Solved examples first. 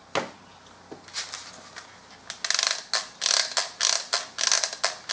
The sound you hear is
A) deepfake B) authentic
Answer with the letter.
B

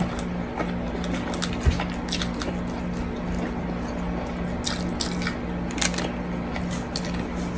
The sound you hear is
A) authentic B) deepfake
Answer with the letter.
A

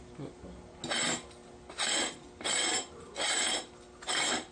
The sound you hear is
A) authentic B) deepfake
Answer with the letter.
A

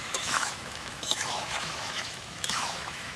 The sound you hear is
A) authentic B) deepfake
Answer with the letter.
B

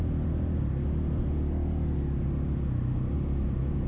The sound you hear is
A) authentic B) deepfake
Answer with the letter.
A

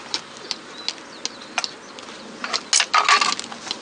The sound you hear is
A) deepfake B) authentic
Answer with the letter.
B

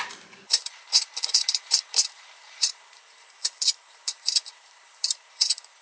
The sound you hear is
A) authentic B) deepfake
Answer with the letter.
B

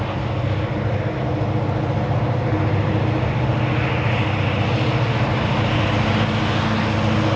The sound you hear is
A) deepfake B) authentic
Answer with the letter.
B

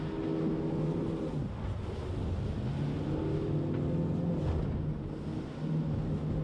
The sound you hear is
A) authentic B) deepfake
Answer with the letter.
A